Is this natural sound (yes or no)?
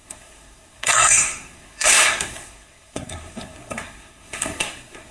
no